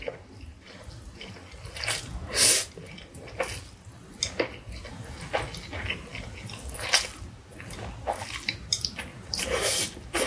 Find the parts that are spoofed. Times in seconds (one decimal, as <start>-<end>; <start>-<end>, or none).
9.1-10.3